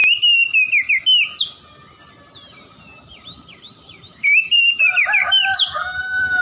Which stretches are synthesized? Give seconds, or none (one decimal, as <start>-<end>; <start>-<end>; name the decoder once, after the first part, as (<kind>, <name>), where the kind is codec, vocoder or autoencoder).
3.1-6.4 (vocoder, BigVGAN v2)